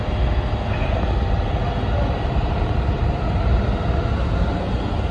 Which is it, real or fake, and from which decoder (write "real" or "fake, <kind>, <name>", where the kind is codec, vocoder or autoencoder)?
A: real